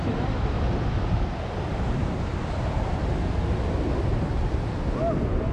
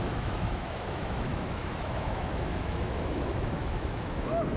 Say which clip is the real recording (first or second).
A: first